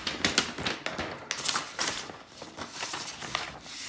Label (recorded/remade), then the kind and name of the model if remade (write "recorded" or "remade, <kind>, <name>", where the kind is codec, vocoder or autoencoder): recorded